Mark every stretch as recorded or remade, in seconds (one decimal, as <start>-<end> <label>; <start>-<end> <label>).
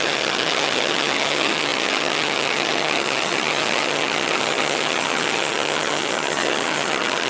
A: 0.0-7.3 remade